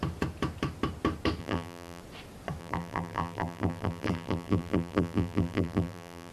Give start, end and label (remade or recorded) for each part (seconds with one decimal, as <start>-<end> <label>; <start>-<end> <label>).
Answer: 0.0-1.4 recorded; 1.4-2.0 remade; 2.0-2.6 recorded; 2.6-6.3 remade